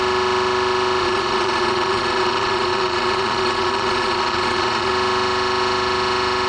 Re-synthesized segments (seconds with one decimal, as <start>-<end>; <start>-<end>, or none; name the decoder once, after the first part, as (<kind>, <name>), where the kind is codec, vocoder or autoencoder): 1.0-4.9 (vocoder, Vocos)